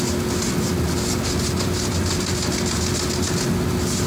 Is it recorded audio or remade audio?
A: recorded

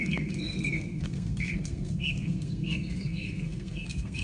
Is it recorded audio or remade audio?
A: remade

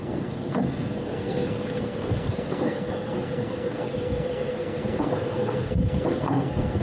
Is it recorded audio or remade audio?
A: remade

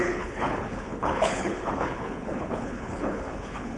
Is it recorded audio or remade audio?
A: remade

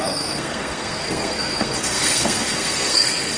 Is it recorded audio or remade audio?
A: remade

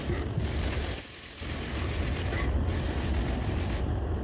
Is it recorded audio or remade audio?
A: recorded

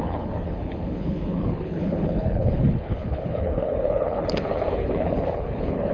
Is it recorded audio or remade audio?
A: remade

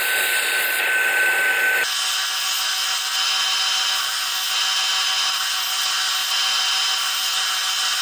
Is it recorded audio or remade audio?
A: recorded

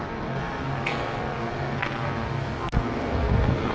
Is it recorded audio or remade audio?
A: remade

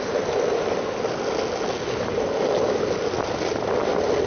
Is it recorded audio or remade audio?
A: recorded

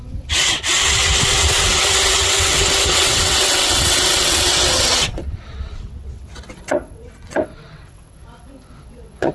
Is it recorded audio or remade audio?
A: remade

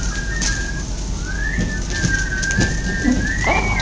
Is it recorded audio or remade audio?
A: recorded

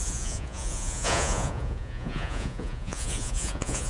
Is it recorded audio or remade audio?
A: remade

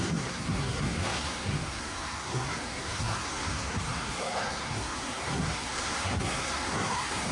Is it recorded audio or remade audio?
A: remade